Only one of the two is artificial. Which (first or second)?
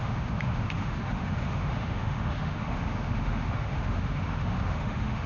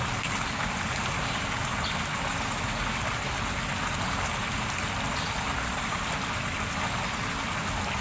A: first